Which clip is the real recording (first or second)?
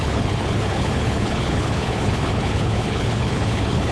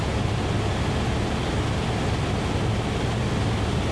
second